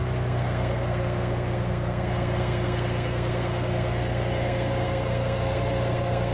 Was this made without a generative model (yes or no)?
no